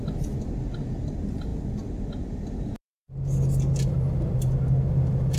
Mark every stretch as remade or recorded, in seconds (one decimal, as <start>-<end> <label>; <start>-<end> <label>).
0.0-5.4 recorded

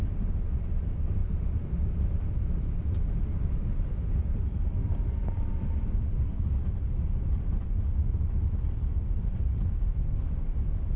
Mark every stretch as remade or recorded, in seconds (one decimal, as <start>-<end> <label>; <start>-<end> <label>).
0.0-11.0 remade

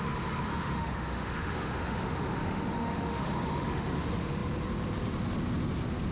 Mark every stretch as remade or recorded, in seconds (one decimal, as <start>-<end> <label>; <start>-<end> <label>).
0.0-0.5 recorded; 0.5-4.0 remade; 4.0-6.1 recorded

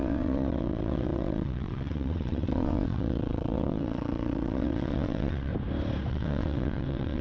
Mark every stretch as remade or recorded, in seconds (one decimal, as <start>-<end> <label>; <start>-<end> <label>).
0.0-5.5 remade; 5.5-6.1 recorded; 6.1-7.2 remade